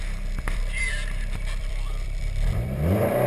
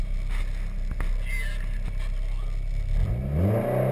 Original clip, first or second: second